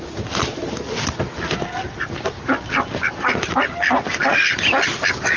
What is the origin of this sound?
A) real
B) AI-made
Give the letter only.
A